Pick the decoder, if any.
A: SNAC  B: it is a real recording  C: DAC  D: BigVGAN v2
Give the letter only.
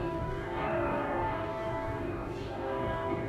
C